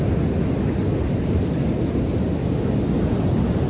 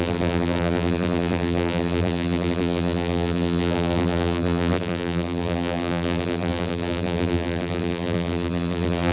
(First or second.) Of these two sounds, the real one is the first